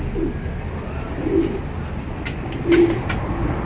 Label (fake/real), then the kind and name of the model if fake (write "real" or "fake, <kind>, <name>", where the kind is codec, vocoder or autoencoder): real